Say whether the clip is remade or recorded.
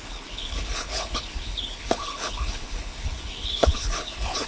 remade